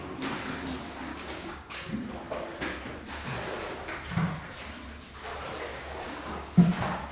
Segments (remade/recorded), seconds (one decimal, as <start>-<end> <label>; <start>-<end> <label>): 0.0-1.1 recorded; 1.1-1.9 remade; 1.9-5.7 recorded; 5.7-6.2 remade; 6.2-7.1 recorded